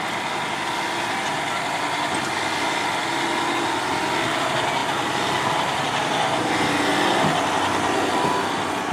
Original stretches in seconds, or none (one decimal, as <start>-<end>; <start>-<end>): 0.0-8.9